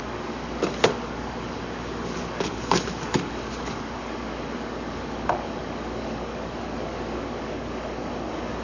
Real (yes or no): no